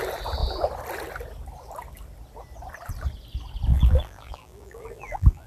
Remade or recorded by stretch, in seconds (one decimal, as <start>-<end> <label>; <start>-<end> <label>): 0.0-3.7 recorded; 3.7-5.5 remade